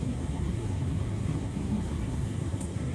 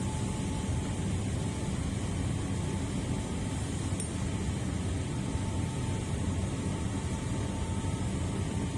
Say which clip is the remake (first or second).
first